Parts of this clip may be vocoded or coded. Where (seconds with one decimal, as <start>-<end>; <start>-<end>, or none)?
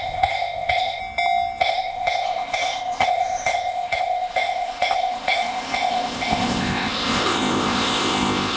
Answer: 0.0-1.0; 1.6-8.6